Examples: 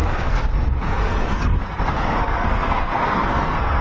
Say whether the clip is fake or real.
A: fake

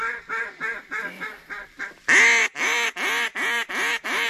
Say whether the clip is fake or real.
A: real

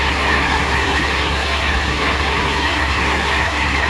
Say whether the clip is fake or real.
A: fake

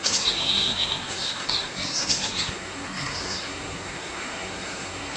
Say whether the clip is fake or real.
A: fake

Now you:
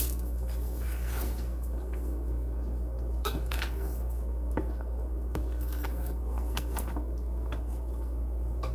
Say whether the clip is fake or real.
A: fake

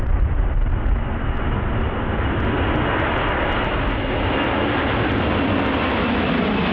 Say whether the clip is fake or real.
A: real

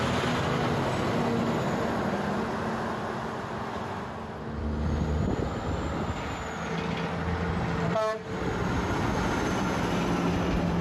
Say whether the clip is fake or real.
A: real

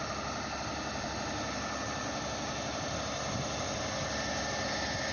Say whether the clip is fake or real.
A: real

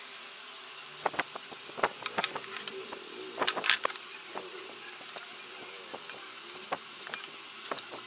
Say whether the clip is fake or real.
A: real